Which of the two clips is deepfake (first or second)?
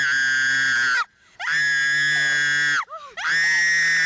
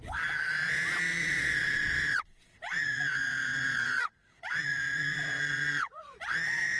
second